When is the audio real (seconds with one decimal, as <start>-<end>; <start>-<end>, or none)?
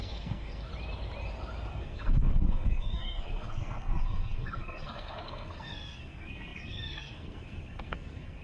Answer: 0.7-1.7